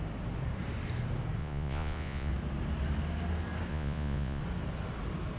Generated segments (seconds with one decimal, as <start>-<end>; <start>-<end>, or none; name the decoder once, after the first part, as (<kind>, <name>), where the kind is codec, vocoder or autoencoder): 1.4-2.3 (vocoder, Vocos); 3.7-4.4